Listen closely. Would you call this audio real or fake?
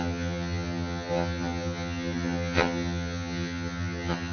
fake